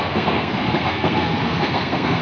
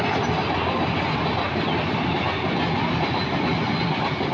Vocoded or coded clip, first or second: first